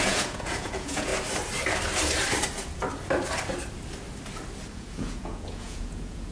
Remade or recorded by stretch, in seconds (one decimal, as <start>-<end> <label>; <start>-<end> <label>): 0.0-1.1 remade; 1.1-4.7 recorded; 4.7-6.3 remade